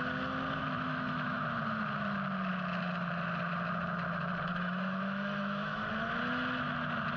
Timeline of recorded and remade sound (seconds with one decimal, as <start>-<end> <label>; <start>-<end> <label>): 0.0-0.6 recorded; 0.6-1.4 remade; 1.4-4.5 recorded; 4.5-5.9 remade; 5.9-7.2 recorded